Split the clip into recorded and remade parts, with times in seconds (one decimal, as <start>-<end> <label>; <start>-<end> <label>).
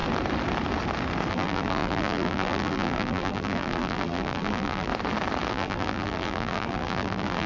0.0-1.3 recorded; 1.3-4.9 remade; 4.9-5.5 recorded; 5.5-7.5 remade